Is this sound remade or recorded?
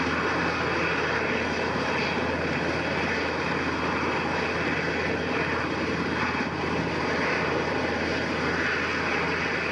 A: recorded